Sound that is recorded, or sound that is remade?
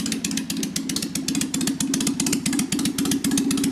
remade